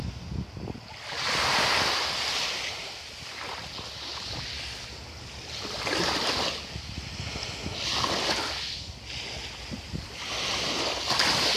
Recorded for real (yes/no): yes